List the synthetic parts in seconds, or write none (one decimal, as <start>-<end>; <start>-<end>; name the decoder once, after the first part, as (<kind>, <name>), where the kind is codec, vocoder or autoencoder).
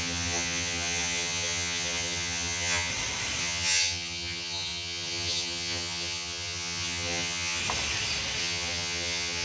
0.0-2.9 (vocoder, HiFi-GAN); 3.4-7.6; 8.4-9.4